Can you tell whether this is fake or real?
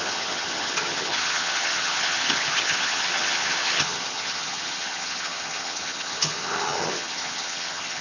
fake